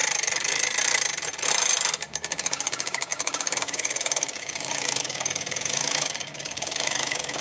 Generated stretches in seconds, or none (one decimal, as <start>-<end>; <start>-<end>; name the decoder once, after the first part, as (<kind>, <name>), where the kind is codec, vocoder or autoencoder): 2.1-7.4 (codec, DAC)